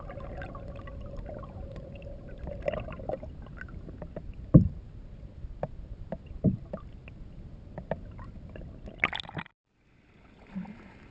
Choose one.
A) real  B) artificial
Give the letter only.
A